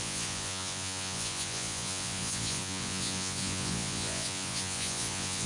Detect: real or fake fake